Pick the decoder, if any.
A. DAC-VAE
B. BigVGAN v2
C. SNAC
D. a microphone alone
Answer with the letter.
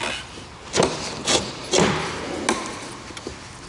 D